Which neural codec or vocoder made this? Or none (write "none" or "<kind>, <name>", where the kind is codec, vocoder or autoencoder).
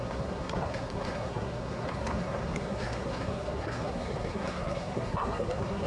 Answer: codec, SNAC